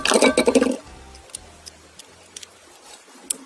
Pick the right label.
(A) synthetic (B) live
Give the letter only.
B